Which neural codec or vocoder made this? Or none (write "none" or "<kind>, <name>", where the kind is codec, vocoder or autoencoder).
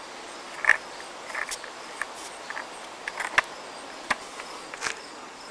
none